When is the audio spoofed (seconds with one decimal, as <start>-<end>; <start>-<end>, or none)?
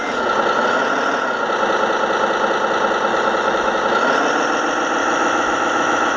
3.1-3.8; 5.0-6.2